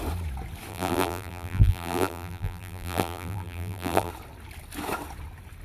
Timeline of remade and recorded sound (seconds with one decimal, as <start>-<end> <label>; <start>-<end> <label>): 0.0-0.7 recorded; 0.7-4.1 remade; 4.1-5.6 recorded